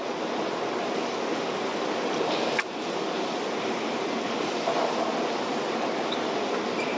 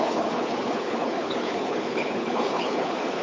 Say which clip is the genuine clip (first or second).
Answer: first